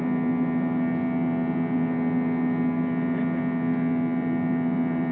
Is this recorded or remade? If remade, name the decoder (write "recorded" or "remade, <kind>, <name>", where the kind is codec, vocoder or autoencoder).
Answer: recorded